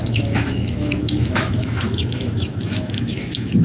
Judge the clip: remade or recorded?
remade